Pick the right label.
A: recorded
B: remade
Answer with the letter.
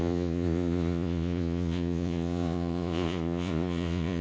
B